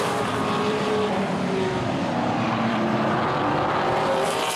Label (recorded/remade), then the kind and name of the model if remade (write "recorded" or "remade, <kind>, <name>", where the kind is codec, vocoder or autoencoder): remade, vocoder, BigVGAN v2